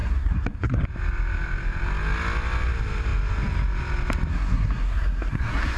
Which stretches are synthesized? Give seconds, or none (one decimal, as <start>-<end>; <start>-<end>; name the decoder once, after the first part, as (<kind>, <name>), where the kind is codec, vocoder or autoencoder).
0.0-0.8 (codec, SNAC); 4.3-5.8